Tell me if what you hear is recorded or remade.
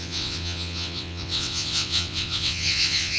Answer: remade